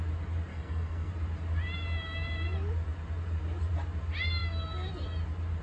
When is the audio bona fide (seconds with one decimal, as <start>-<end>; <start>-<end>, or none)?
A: 0.0-0.5; 1.1-5.6